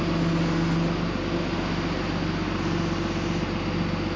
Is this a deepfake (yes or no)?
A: no